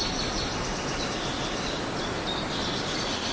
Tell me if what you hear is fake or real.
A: real